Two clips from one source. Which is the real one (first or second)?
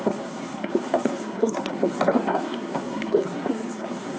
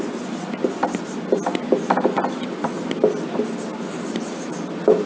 second